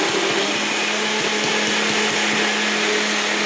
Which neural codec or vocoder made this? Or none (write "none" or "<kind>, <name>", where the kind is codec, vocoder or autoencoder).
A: none